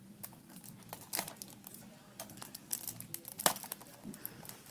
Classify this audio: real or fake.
real